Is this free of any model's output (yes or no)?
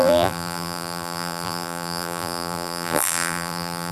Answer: no